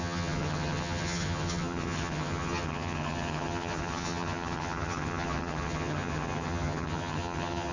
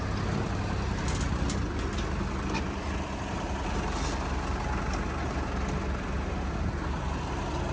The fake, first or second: first